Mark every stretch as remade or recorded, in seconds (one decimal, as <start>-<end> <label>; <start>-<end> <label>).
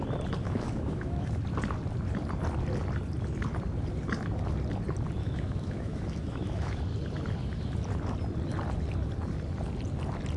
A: 0.0-0.4 recorded; 0.4-1.3 remade; 1.3-5.2 recorded; 5.2-6.8 remade; 6.8-10.4 recorded